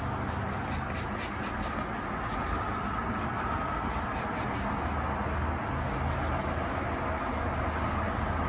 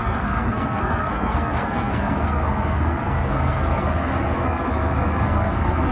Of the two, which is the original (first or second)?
first